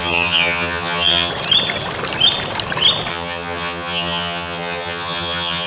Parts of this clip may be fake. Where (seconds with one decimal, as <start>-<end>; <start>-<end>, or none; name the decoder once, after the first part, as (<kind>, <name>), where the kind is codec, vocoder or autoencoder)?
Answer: 0.0-1.3 (vocoder, HiFi-GAN); 3.1-5.7